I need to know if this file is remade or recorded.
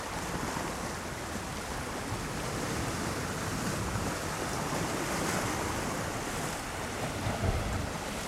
recorded